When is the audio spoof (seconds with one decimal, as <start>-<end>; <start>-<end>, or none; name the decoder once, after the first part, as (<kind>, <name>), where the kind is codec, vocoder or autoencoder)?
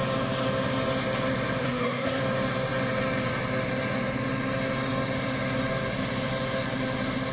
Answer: 1.6-2.2 (codec, SNAC)